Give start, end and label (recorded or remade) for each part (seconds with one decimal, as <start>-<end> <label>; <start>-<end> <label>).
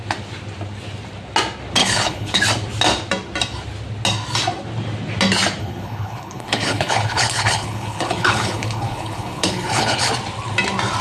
0.0-1.8 recorded; 1.8-2.4 remade; 2.4-5.6 recorded; 5.6-10.1 remade; 10.1-11.0 recorded